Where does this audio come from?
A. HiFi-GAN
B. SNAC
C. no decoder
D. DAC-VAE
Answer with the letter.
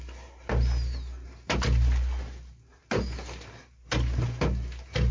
C